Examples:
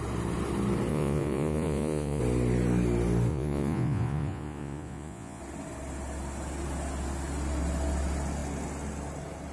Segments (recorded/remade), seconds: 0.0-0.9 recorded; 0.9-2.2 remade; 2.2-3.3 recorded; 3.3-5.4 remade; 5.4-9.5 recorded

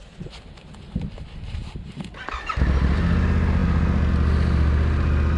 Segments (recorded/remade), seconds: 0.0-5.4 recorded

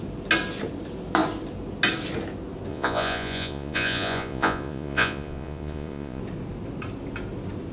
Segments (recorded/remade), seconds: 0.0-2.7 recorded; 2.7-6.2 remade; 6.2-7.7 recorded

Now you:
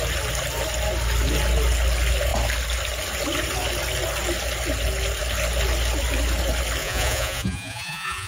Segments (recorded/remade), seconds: 0.0-6.8 recorded; 6.8-8.3 remade

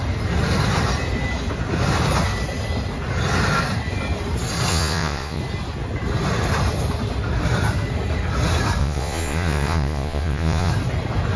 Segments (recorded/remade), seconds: 0.0-4.7 recorded; 4.7-5.4 remade; 5.4-8.8 recorded; 8.8-10.7 remade; 10.7-11.4 recorded